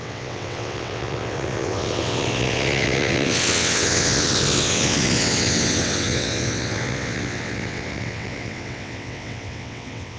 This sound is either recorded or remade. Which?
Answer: remade